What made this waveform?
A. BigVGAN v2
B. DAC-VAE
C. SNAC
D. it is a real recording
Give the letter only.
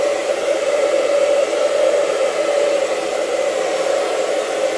A